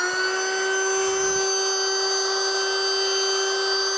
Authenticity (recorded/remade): recorded